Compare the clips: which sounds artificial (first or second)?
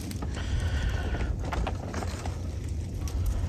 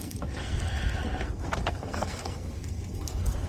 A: second